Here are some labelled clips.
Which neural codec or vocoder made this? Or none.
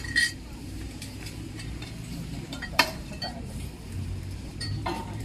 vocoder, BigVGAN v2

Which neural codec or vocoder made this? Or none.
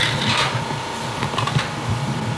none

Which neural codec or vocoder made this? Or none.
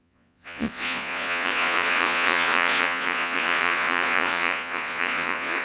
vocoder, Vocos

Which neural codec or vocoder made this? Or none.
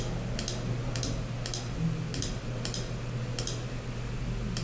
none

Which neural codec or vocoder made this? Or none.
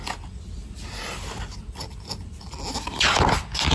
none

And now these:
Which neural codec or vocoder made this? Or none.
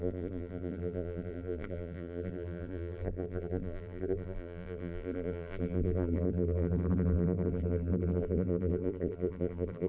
vocoder, BigVGAN v2